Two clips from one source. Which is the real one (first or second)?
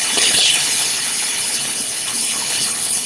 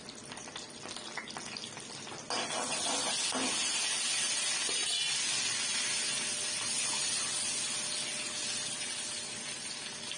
second